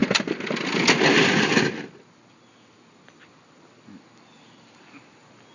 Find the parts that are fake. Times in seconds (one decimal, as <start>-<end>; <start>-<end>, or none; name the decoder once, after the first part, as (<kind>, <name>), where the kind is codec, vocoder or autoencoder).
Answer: none